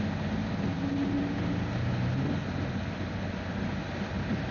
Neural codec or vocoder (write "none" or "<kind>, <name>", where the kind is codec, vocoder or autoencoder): none